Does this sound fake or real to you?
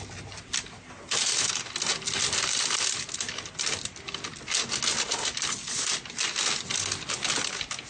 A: real